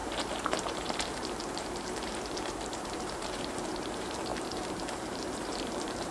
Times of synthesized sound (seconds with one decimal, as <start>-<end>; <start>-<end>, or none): 0.0-6.1